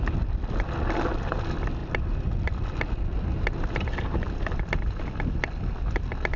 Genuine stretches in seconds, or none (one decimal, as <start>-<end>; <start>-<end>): 0.0-6.4